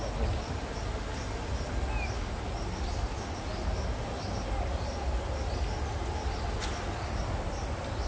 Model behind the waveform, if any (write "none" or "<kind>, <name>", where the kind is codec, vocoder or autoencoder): none